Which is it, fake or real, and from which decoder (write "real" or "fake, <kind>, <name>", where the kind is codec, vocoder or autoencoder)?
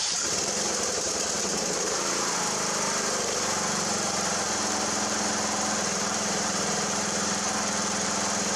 fake, vocoder, BigVGAN v2